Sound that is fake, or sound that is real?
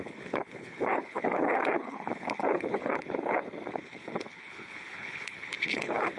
fake